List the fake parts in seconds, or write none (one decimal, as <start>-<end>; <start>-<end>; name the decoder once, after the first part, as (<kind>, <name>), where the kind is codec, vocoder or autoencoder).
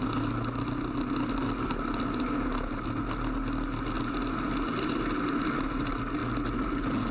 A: none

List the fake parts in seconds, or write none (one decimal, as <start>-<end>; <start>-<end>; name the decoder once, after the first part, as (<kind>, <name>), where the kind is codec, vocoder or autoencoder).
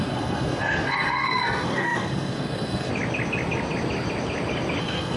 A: 0.0-2.9 (codec, SNAC); 4.8-5.2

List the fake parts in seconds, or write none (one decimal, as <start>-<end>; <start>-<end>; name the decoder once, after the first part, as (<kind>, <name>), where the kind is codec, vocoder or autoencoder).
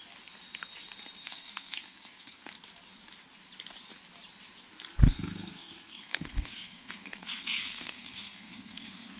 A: 1.2-2.5 (codec, SNAC); 5.1-9.2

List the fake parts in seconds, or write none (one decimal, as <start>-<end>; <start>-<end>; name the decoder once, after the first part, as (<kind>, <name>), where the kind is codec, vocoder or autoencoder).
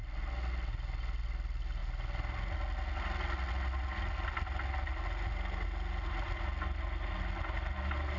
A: none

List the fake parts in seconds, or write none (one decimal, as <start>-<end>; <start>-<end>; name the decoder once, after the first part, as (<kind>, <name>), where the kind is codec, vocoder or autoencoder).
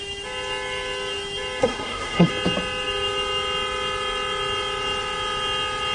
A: 1.6-2.3 (codec, SNAC)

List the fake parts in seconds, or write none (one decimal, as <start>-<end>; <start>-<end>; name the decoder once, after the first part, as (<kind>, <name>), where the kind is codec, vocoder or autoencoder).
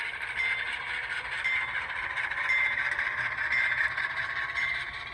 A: none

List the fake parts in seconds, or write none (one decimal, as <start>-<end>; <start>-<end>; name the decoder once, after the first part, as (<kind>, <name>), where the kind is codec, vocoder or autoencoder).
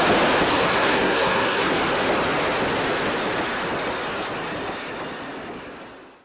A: 0.5-1.7 (codec, SNAC)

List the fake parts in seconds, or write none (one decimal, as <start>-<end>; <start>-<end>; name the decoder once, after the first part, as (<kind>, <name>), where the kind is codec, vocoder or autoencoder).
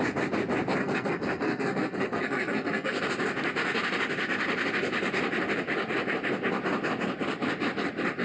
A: 0.8-3.0 (codec, SNAC)